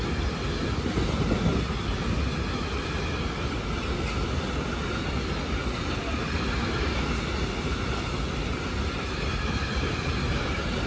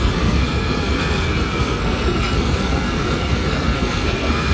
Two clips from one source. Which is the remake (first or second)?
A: second